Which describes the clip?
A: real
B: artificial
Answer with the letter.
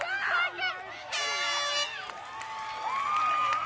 A